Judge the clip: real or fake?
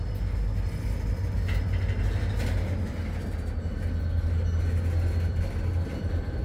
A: real